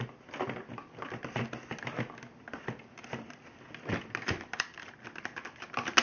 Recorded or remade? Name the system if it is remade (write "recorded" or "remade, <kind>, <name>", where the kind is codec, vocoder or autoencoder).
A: recorded